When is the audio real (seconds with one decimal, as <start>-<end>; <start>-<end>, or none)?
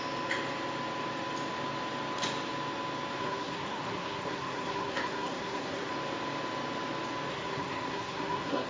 0.0-3.2; 5.9-7.3